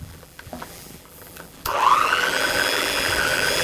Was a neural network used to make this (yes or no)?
yes